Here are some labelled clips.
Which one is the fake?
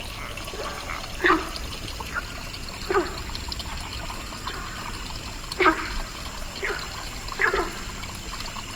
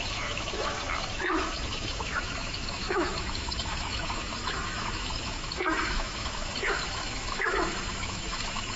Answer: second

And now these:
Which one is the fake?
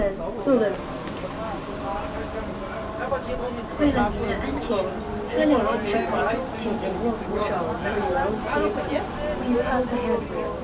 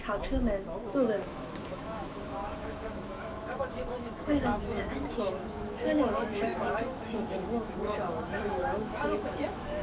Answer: second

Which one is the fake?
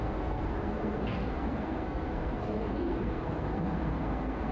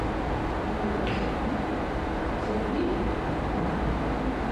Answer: first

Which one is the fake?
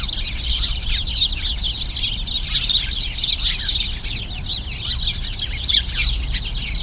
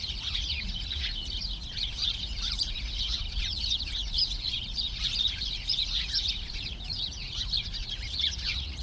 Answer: second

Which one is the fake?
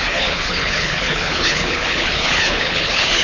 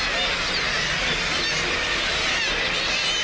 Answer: first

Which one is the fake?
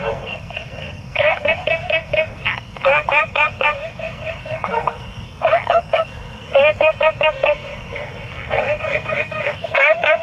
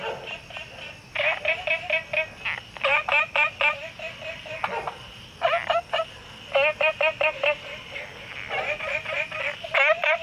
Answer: first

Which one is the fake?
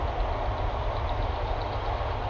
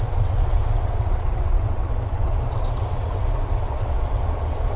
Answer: second